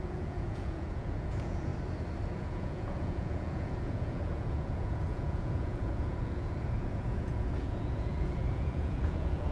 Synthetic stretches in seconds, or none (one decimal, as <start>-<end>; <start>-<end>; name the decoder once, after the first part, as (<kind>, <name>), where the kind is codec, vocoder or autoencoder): 0.0-1.7 (vocoder, Vocos); 2.4-9.5